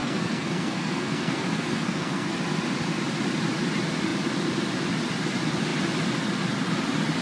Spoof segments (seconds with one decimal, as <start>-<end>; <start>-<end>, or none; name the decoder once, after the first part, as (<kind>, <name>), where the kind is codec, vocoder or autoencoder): 0.0-2.3 (codec, SNAC)